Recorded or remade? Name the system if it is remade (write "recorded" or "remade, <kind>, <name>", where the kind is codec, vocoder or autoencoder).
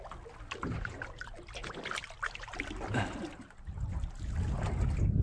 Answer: recorded